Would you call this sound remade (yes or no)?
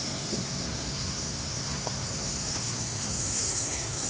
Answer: yes